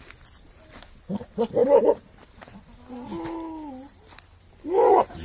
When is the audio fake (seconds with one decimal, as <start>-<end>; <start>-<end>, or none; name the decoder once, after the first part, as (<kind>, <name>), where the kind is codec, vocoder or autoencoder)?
none